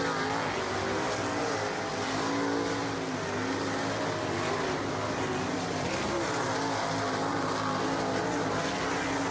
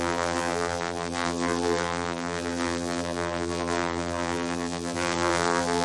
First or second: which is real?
first